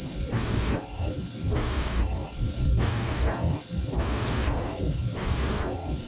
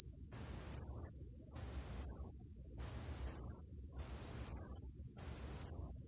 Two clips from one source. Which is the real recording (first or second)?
second